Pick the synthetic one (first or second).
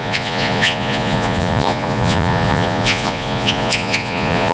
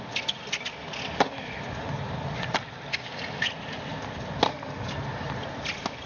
first